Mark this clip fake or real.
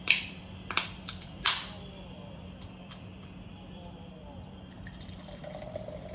fake